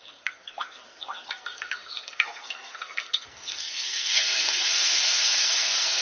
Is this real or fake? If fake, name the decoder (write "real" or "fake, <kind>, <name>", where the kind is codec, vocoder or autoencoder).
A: fake, codec, SNAC